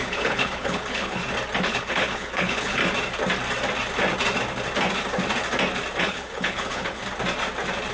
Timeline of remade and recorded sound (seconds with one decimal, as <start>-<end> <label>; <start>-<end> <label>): 0.0-1.2 remade; 1.2-1.7 recorded; 1.7-2.8 remade; 2.8-6.0 recorded; 6.0-7.0 remade; 7.0-7.9 recorded